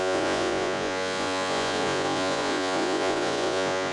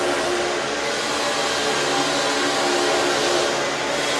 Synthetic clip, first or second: first